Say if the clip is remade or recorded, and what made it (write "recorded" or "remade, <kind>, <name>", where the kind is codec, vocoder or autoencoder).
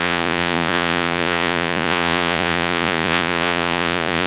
remade, vocoder, Vocos